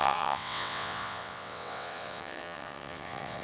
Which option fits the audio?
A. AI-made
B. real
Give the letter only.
A